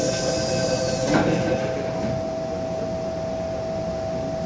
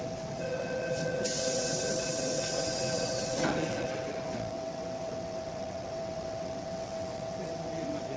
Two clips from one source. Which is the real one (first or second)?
first